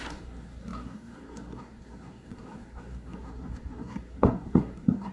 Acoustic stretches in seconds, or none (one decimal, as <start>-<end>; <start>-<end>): none